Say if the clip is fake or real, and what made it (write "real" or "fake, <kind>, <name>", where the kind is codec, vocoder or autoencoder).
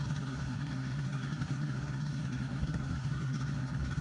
fake, codec, SNAC